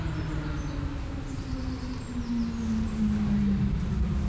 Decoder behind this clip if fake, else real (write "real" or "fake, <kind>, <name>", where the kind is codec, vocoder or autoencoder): real